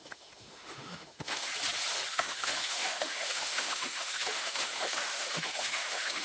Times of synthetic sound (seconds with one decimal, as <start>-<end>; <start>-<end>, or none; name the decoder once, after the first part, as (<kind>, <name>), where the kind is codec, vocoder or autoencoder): 0.0-1.5 (autoencoder, DAC-VAE); 2.1-6.2